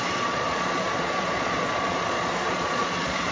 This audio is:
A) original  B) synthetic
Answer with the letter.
B